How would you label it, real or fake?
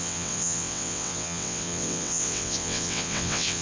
fake